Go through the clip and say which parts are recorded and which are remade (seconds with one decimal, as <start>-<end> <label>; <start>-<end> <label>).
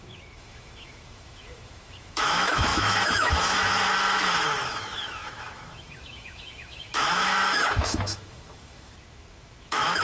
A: 0.0-10.0 remade